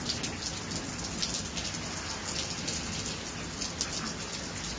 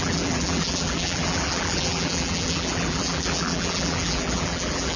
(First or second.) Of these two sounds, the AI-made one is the second